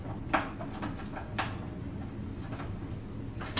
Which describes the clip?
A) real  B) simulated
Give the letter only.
A